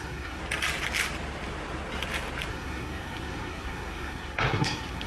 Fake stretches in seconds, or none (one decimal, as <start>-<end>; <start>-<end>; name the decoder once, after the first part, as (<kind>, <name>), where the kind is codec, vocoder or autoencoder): 0.0-0.4 (codec, SNAC); 2.5-5.1